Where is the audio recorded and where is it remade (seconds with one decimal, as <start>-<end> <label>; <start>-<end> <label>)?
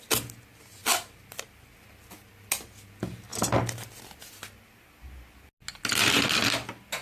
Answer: 0.0-7.0 recorded